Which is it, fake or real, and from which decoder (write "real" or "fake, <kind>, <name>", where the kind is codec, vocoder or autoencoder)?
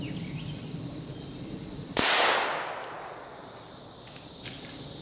real